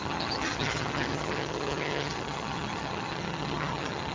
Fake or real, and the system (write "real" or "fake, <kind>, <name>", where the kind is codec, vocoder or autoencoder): fake, vocoder, HiFi-GAN